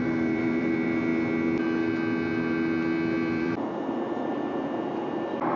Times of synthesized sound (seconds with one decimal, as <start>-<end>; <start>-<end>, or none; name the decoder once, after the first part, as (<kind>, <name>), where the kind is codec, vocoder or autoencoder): 0.0-1.1 (vocoder, BigVGAN v2); 3.4-4.3